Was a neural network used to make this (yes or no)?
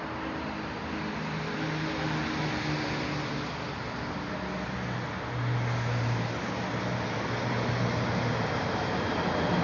no